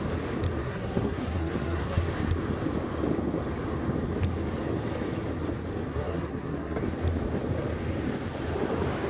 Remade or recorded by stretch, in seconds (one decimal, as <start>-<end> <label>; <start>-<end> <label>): 0.0-0.6 recorded; 0.6-2.1 remade; 2.1-5.9 recorded; 5.9-6.8 remade; 6.8-9.1 recorded